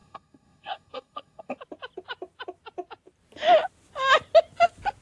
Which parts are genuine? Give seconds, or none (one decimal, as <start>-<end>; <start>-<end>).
1.6-5.0